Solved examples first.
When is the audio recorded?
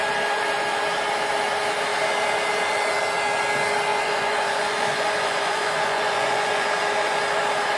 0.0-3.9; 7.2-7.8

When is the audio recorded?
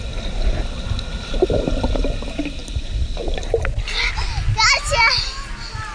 0.0-5.9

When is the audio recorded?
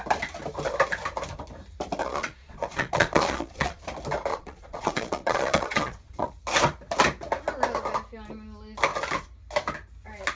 0.0-2.0; 3.8-4.3; 6.3-10.4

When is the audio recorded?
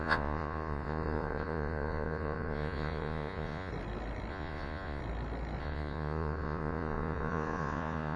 3.7-4.3; 5.0-5.6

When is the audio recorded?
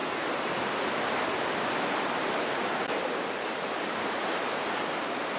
0.0-5.4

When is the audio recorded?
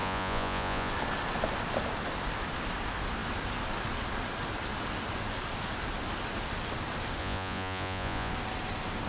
0.9-7.2; 8.3-9.1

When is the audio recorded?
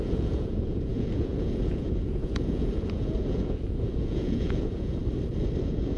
5.0-5.6